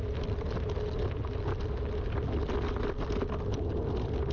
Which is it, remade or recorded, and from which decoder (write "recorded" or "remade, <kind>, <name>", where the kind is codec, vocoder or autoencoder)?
recorded